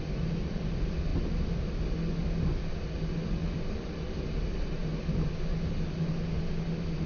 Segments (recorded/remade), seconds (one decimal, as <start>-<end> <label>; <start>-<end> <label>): 0.0-7.1 recorded